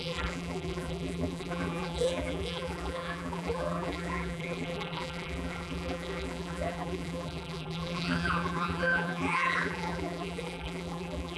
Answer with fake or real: fake